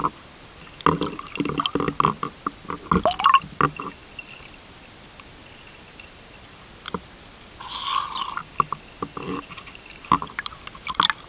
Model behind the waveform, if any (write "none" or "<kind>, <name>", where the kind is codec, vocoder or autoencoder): none